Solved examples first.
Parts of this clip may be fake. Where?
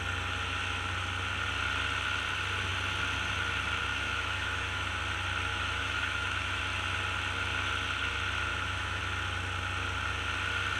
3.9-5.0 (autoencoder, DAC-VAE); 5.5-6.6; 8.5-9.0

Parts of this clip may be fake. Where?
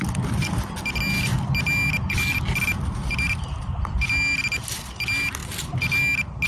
none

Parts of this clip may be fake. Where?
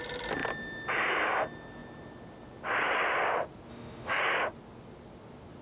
3.7-4.2 (autoencoder, DAC-VAE)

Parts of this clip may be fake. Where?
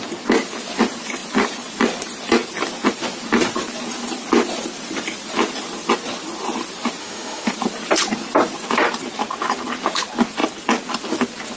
7.0-7.5 (autoencoder, DAC-VAE)